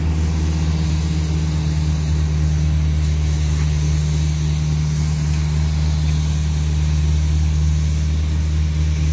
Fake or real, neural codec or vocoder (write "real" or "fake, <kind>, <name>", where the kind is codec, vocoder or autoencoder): real